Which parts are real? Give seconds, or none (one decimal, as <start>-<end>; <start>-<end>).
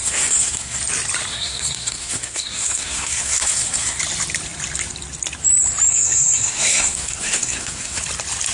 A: 0.8-1.3; 4.0-5.9; 8.0-8.5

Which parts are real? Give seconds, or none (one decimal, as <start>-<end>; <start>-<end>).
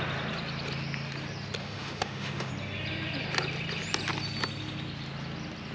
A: 0.0-1.6; 2.5-5.7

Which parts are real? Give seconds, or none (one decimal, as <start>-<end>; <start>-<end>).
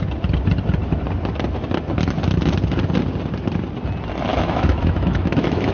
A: 0.0-4.3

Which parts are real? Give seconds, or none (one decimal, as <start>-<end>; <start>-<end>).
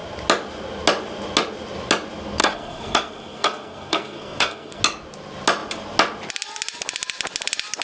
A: 0.0-2.4; 4.8-7.8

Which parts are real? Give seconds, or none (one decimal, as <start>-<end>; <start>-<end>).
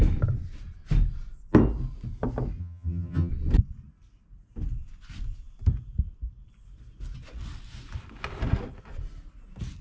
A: 0.0-2.6; 3.3-9.8